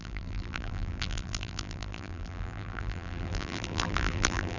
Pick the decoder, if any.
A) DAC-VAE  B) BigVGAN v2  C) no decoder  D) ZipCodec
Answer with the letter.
B